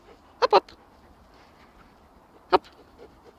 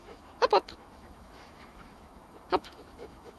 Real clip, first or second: first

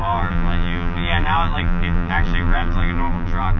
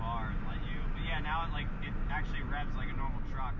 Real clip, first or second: second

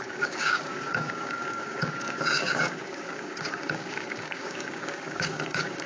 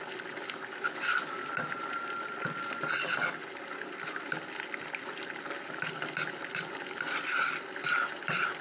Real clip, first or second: second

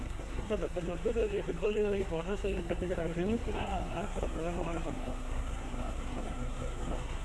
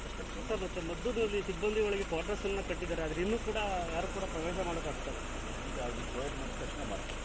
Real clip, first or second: second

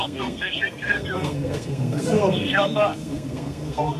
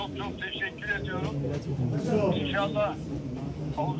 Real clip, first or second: second